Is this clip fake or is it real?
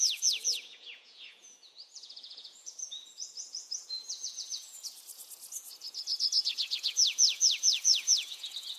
fake